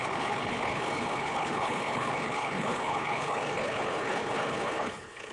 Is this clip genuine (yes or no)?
no